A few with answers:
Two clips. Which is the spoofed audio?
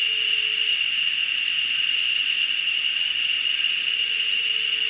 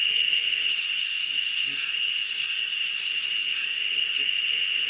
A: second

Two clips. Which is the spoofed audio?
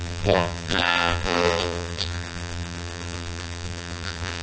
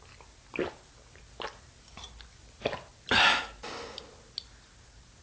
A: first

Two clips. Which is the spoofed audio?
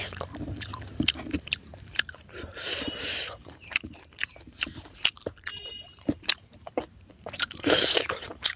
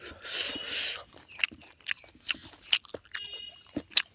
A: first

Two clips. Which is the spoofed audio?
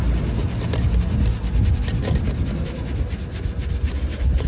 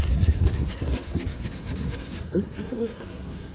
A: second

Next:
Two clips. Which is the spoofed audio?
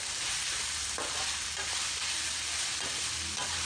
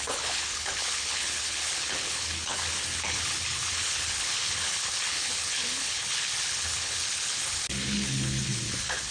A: second